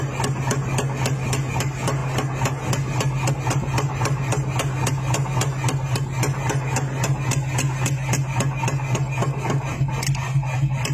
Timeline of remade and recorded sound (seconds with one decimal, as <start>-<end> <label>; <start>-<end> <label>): 0.0-10.9 recorded